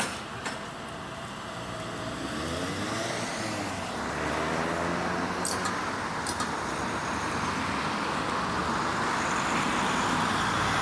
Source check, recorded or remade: recorded